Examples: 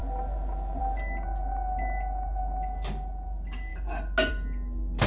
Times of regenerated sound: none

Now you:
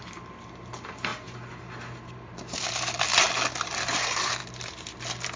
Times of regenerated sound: none

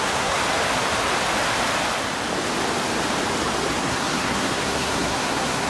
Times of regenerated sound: 0.0-0.4 (codec, SNAC); 3.8-5.7

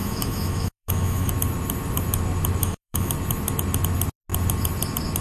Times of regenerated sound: 0.0-1.3 (autoencoder, DAC-VAE); 2.6-3.1

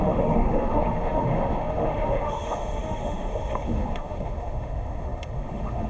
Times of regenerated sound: 0.0-5.9 (autoencoder, DAC-VAE)

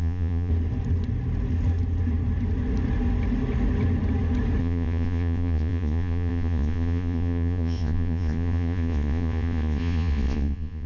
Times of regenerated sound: 0.0-0.5 (vocoder, Vocos); 4.6-10.9

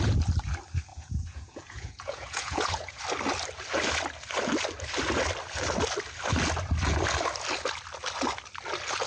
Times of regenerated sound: 0.9-3.0 (vocoder, Vocos)